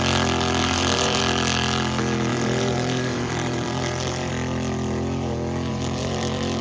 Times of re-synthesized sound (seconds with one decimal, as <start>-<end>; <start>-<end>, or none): 0.6-1.2; 2.3-4.3; 5.7-6.6